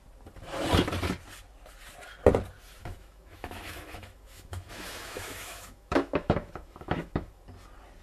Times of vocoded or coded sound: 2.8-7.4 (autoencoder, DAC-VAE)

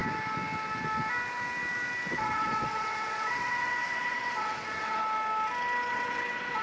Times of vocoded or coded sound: 2.1-5.0 (vocoder, WaveNeXt); 5.9-6.6